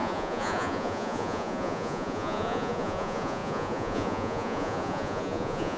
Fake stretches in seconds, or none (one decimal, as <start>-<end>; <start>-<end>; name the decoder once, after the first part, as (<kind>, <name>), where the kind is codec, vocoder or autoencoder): 0.0-5.8 (vocoder, Vocos)